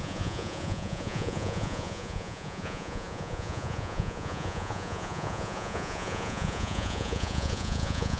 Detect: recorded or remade remade